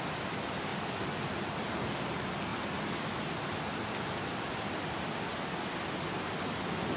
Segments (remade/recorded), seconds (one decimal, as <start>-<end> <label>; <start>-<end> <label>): 0.0-7.0 recorded